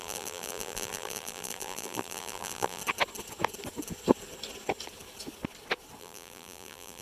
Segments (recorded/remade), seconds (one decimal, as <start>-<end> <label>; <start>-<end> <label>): 0.0-2.8 remade; 2.8-6.0 recorded; 6.0-7.0 remade